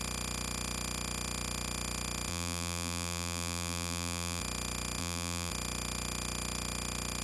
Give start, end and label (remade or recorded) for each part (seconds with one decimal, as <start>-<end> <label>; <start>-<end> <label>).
0.0-2.3 recorded; 2.3-4.4 remade; 4.4-5.0 recorded; 5.0-5.5 remade; 5.5-7.2 recorded